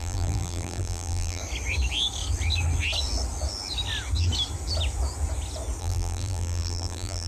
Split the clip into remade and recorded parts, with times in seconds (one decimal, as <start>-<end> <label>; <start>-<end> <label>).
0.0-1.4 remade; 1.4-5.8 recorded; 5.8-7.3 remade